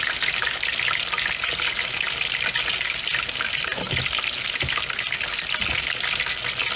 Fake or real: real